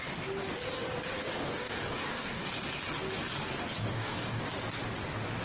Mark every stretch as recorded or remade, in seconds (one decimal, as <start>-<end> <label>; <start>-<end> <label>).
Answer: 0.0-1.2 recorded; 1.2-2.5 remade; 2.5-3.9 recorded; 3.9-4.5 remade; 4.5-5.4 recorded